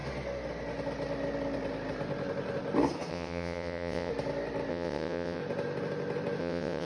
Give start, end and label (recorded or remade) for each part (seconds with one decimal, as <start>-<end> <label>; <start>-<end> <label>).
0.0-3.1 recorded; 3.1-4.1 remade; 4.1-4.7 recorded; 4.7-5.4 remade; 5.4-6.4 recorded; 6.4-6.9 remade